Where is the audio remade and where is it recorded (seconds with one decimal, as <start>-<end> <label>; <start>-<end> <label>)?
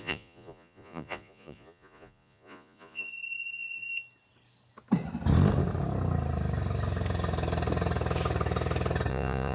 0.0-3.9 remade; 3.9-9.1 recorded; 9.1-9.5 remade